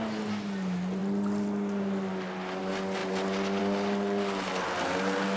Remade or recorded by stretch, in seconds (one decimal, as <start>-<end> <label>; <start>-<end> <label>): 0.0-5.4 recorded